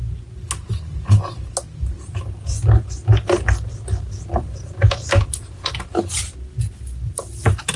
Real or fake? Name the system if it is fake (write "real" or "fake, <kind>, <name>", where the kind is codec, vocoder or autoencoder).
real